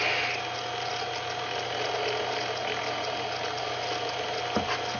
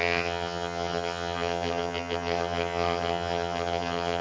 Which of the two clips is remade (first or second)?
second